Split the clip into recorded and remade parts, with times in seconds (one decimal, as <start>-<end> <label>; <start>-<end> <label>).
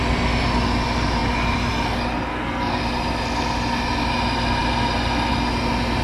0.0-2.3 recorded; 2.3-2.8 remade; 2.8-6.0 recorded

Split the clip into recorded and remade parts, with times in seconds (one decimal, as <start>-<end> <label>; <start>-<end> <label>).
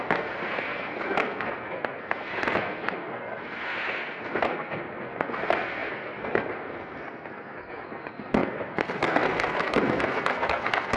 0.0-11.0 remade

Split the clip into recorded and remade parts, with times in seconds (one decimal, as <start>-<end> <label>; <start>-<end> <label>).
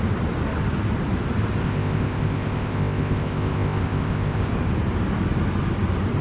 0.0-1.6 recorded; 1.6-4.5 remade; 4.5-6.2 recorded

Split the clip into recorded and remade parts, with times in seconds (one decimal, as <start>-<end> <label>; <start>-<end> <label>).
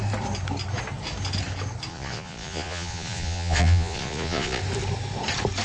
0.0-1.9 recorded; 1.9-4.6 remade; 4.6-5.6 recorded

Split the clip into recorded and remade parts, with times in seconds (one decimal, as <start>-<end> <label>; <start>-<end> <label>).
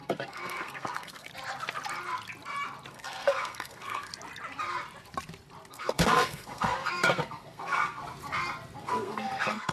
0.0-1.3 remade; 1.3-2.9 recorded; 2.9-4.1 remade; 4.1-5.7 recorded; 5.7-8.0 remade; 8.0-8.8 recorded; 8.8-9.7 remade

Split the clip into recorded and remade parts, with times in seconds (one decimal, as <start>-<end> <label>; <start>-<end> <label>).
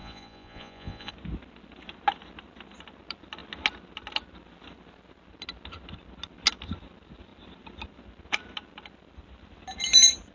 0.0-1.1 remade; 1.1-10.3 recorded